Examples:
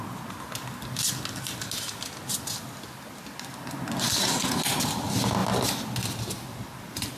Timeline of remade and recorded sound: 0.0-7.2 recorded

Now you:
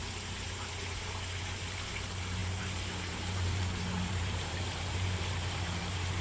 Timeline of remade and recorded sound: 0.0-2.4 recorded; 2.4-6.2 remade